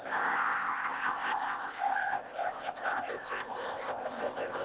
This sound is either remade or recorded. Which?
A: remade